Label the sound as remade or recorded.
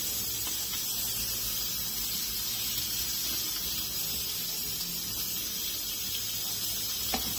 recorded